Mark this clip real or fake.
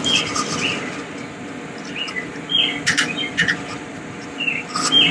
real